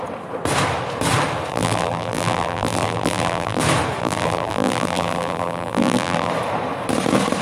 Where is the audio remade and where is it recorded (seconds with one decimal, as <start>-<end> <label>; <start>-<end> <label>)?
0.0-1.5 recorded; 1.5-3.6 remade; 3.6-4.0 recorded; 4.0-6.3 remade; 6.3-7.4 recorded